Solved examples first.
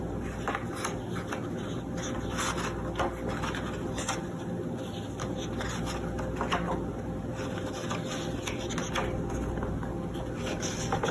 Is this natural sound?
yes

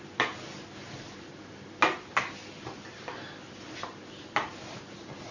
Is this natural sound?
yes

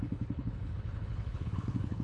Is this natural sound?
no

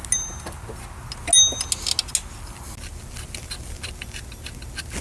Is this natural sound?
yes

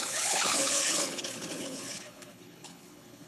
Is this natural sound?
no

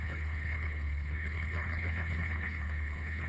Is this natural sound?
no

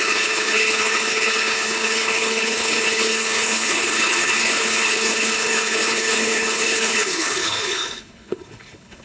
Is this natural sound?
no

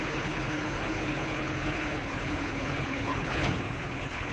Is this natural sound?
no